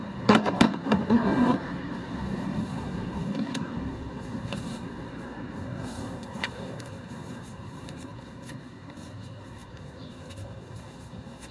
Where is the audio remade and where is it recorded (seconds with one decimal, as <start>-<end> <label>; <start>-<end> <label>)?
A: 0.0-11.5 remade